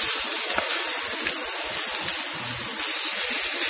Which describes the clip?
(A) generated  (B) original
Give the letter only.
B